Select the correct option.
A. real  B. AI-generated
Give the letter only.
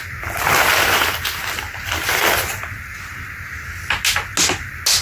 A